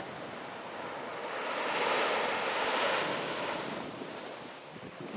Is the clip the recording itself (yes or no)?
yes